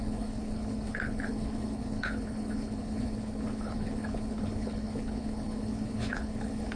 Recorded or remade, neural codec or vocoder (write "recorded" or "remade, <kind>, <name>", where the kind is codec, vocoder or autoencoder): remade, codec, HILCodec